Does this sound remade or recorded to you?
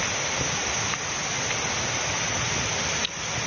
recorded